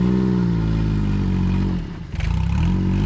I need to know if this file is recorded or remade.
recorded